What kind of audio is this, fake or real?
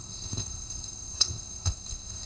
fake